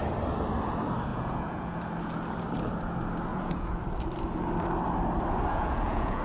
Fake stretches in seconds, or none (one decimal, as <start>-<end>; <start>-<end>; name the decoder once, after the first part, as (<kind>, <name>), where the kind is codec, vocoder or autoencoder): 1.1-1.8 (vocoder, Vocos); 3.3-3.8; 5.5-6.2